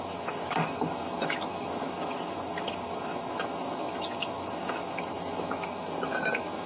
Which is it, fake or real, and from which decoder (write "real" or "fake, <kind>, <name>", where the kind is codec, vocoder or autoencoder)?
fake, autoencoder, DAC-VAE